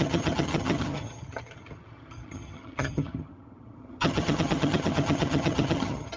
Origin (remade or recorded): remade